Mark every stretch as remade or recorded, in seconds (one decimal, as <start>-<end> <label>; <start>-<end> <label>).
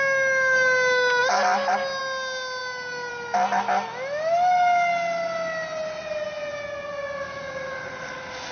0.0-8.5 recorded